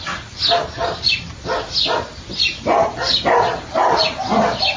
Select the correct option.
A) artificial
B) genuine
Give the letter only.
B